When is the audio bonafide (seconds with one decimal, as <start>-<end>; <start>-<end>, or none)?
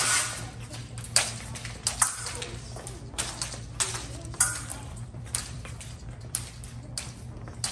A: 0.0-4.7; 6.2-7.7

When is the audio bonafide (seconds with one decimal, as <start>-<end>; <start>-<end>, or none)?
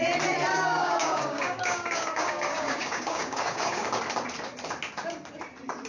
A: 0.0-0.5; 4.0-5.9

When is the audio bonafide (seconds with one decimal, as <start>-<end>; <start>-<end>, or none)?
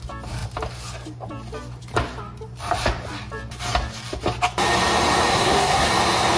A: 0.0-5.3; 5.9-6.4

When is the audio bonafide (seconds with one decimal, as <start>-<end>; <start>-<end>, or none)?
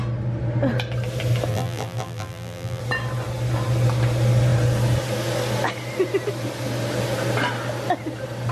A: 0.0-1.5; 2.8-8.5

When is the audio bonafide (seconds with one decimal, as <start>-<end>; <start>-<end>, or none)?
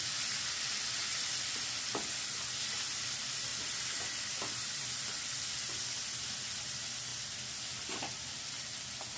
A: 0.0-3.5; 5.0-9.2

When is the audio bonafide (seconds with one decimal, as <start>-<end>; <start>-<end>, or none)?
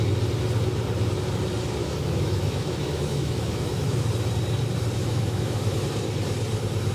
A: 0.0-1.8; 4.1-5.0; 5.9-6.9